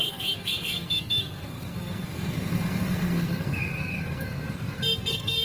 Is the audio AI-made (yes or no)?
yes